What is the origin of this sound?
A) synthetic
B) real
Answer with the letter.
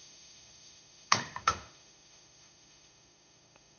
A